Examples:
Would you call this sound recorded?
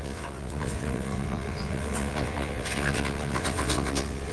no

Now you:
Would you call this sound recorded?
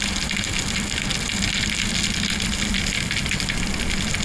yes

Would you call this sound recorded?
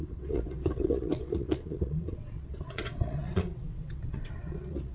no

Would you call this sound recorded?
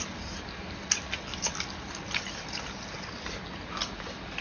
yes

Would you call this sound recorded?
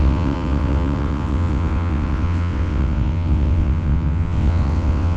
no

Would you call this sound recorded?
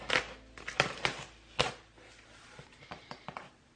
yes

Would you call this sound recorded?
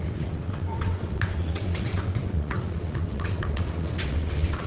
no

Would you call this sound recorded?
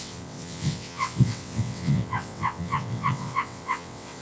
no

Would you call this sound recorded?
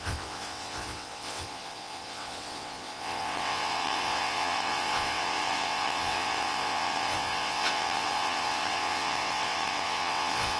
no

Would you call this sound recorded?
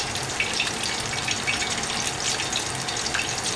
yes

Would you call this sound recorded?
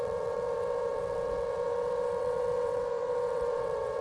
no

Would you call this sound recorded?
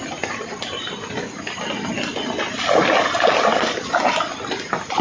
yes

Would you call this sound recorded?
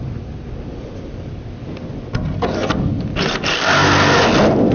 yes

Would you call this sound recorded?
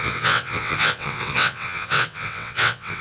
no